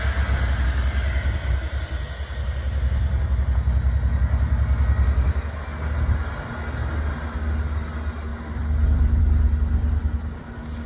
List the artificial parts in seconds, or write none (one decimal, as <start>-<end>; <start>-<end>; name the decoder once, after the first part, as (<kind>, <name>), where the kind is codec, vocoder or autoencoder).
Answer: 8.3-9.2 (vocoder, BigVGAN v2)